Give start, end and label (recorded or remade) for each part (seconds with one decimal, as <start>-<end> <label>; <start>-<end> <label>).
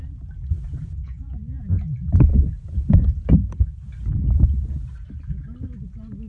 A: 0.0-1.0 recorded; 1.0-1.6 remade; 1.6-6.3 recorded